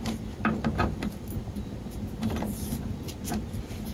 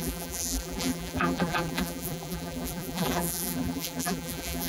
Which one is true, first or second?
first